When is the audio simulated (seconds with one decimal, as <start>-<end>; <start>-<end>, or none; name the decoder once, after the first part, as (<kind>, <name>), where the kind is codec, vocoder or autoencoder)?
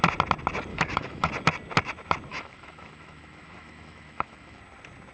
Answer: 0.7-1.3 (autoencoder, DAC-VAE); 2.3-4.6